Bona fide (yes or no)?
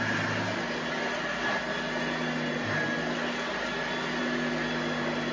yes